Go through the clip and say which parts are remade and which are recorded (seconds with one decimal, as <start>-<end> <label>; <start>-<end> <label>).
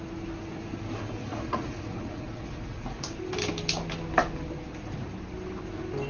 0.0-1.2 recorded; 1.2-3.0 remade; 3.0-6.1 recorded